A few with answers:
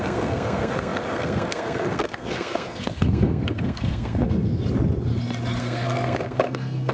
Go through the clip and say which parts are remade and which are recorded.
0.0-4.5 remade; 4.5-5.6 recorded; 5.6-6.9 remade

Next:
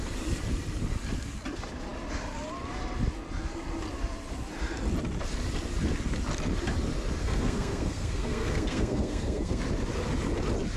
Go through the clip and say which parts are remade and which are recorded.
0.0-7.2 recorded; 7.2-9.6 remade; 9.6-10.8 recorded

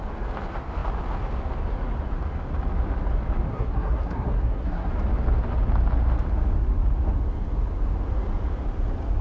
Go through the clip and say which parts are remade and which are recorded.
0.0-3.5 recorded; 3.5-4.9 remade; 4.9-9.2 recorded

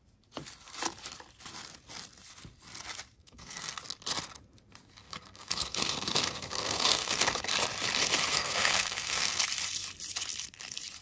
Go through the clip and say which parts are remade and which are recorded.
0.0-3.2 recorded; 3.2-3.8 remade; 3.8-5.0 recorded; 5.0-7.5 remade; 7.5-8.3 recorded; 8.3-9.4 remade; 9.4-11.0 recorded

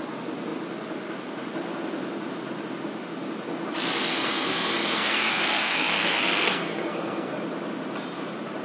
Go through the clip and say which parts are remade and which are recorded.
0.0-4.1 recorded; 4.1-7.3 remade; 7.3-8.6 recorded

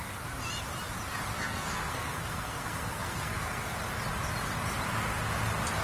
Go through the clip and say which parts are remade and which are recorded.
0.0-1.3 recorded; 1.3-3.7 remade; 3.7-5.8 recorded

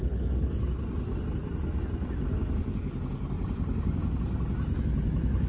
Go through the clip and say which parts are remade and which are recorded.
0.0-5.5 recorded

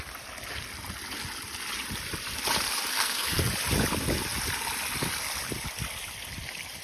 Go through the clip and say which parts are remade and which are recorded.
0.0-2.9 recorded; 2.9-3.5 remade; 3.5-6.8 recorded